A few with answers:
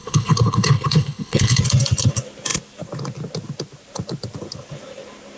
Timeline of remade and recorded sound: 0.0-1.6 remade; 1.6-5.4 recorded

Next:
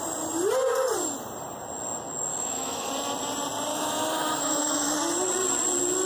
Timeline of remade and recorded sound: 0.0-2.3 recorded; 2.3-2.9 remade; 2.9-3.7 recorded; 3.7-5.0 remade; 5.0-6.1 recorded

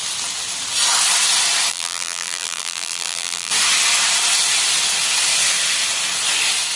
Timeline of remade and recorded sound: 0.0-1.7 recorded; 1.7-3.5 remade; 3.5-6.8 recorded

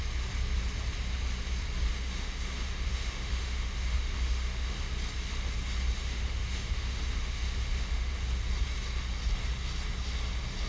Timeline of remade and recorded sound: 0.0-1.9 recorded; 1.9-4.9 remade; 4.9-6.0 recorded; 6.0-8.1 remade; 8.1-10.7 recorded

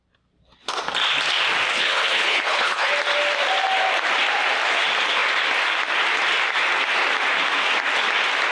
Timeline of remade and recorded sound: 0.0-1.7 recorded; 1.7-2.9 remade; 2.9-8.5 recorded

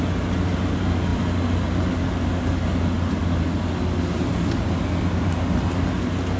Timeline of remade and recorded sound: 0.0-6.4 recorded

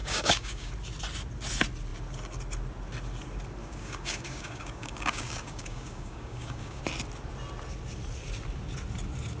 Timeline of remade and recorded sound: 0.0-0.7 remade; 0.7-3.6 recorded; 3.6-6.8 remade; 6.8-9.4 recorded